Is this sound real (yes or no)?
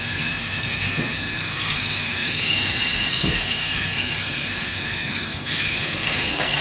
no